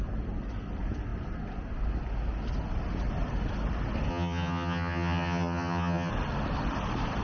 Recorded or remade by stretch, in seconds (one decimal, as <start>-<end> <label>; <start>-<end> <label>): 0.0-4.1 recorded; 4.1-6.1 remade; 6.1-7.2 recorded